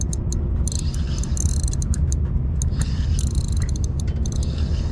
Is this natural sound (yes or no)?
yes